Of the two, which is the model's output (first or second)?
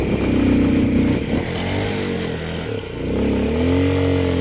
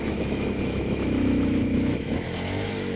second